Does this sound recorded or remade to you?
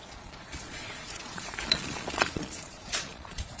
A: remade